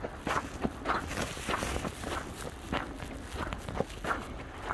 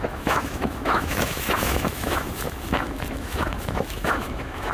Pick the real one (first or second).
first